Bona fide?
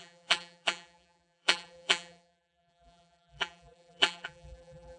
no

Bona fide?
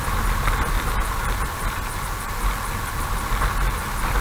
yes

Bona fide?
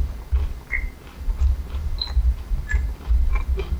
yes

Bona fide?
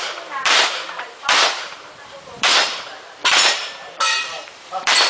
no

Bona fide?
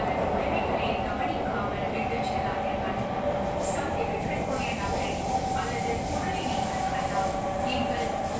yes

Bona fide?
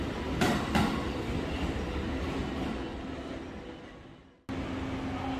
yes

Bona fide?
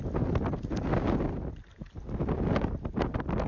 yes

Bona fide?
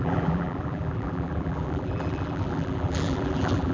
no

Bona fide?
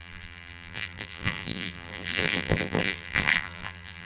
no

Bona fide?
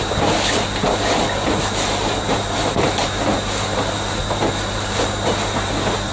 no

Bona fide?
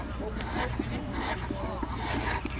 yes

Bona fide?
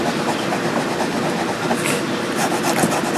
no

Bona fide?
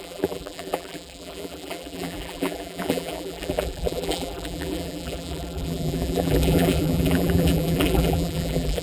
no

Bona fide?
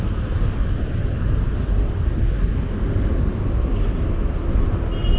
yes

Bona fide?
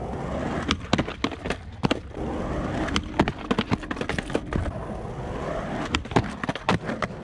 yes